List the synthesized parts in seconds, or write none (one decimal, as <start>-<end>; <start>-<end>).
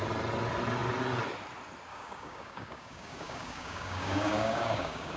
1.9-5.2